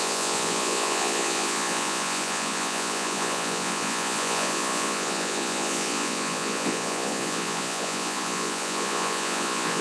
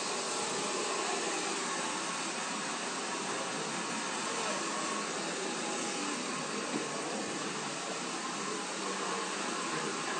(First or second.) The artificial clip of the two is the first